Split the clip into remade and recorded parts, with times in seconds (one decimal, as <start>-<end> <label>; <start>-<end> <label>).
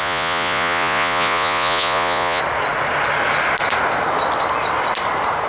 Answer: 0.0-2.4 remade; 2.4-5.5 recorded